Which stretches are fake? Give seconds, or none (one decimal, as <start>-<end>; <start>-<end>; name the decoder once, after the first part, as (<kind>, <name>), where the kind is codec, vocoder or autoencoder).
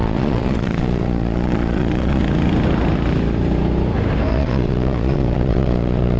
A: 0.0-2.2 (vocoder, Vocos); 4.3-6.2